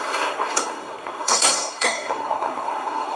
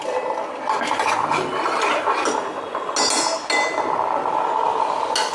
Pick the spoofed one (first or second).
first